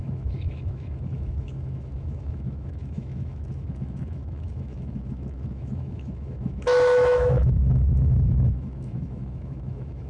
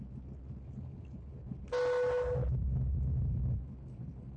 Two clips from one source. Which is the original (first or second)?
second